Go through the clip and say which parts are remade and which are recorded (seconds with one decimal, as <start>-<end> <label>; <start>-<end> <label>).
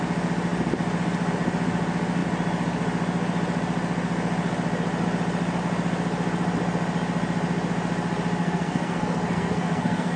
0.0-8.4 recorded; 8.4-10.2 remade